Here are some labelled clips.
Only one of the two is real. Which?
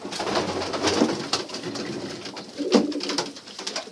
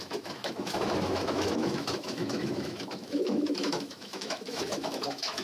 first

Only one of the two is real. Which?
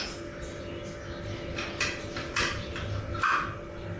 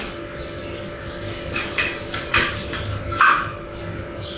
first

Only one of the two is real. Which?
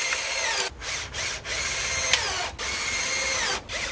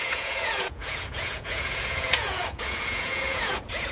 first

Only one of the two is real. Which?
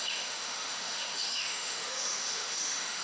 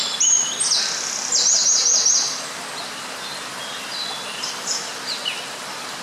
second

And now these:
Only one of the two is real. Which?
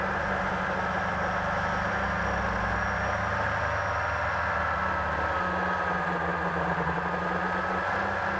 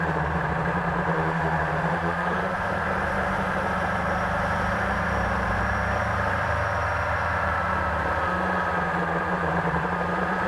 first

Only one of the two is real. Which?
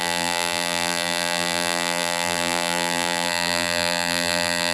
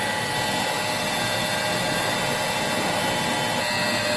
second